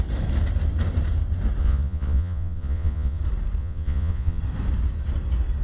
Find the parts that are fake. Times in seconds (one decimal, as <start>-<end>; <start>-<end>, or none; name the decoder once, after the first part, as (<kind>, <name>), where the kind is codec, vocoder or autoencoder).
1.6-3.2 (vocoder, Vocos); 3.6-4.4